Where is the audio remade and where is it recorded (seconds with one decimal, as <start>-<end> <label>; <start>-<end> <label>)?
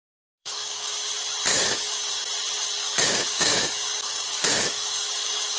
0.0-0.4 recorded; 0.4-1.1 remade; 1.1-1.5 recorded; 1.5-2.1 remade; 2.1-2.8 recorded; 2.8-5.6 remade